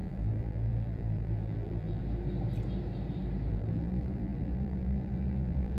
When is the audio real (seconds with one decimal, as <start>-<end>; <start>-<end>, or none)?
2.0-3.5